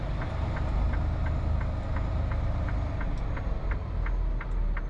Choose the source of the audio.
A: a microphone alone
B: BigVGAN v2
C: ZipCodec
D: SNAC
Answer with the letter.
A